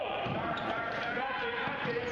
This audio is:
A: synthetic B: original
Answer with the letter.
A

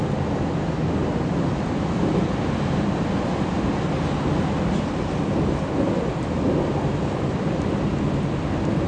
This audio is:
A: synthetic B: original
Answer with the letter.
B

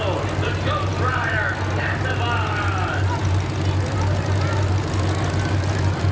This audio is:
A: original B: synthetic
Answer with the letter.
A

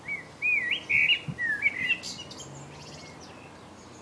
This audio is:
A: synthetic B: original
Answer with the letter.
B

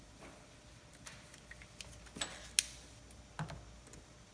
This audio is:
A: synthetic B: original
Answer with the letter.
B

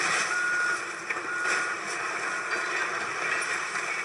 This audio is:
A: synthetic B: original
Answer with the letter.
B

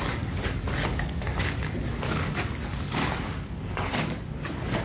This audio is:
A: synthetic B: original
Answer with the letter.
A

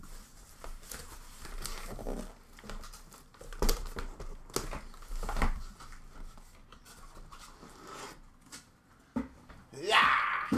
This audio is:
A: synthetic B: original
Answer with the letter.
B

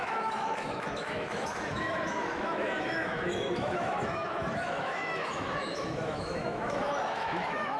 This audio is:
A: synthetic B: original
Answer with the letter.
A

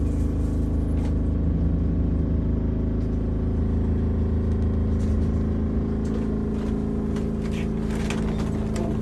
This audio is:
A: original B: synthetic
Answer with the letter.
A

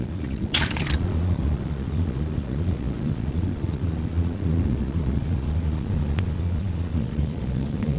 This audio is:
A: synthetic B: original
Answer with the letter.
A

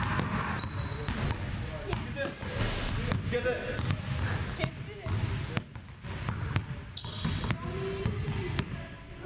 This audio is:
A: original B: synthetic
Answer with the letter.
A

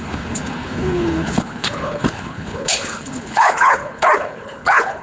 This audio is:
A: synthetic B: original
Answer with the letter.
A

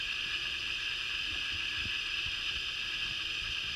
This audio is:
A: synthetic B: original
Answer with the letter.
B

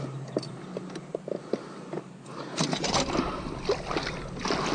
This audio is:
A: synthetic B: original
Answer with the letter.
B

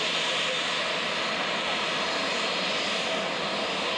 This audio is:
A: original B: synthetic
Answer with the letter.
B